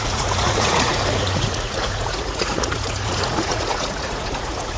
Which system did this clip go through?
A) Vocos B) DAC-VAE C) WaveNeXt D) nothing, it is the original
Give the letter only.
A